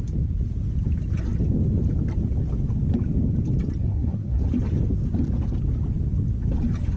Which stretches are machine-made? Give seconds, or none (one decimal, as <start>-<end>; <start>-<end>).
3.8-4.4